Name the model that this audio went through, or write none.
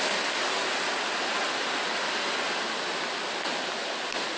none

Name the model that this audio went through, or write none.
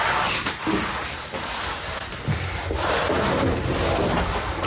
none